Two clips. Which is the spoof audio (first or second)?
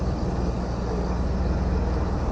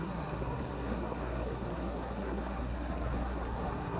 second